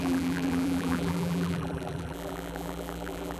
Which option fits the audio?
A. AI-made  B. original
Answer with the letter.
A